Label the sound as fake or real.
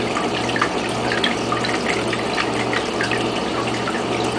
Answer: real